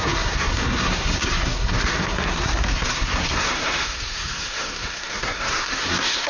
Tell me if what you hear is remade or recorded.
remade